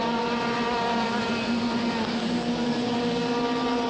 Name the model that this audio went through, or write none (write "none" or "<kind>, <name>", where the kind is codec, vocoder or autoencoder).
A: none